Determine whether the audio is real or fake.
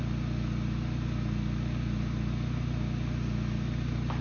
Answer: real